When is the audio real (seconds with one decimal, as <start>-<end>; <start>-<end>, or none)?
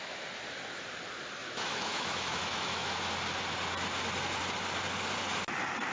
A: 0.0-1.4; 3.1-5.9